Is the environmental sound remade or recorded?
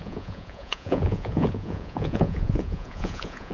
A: remade